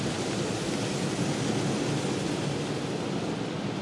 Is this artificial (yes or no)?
no